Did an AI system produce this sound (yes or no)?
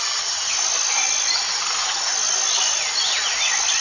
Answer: no